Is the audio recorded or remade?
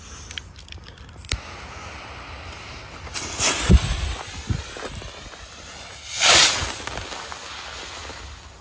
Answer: recorded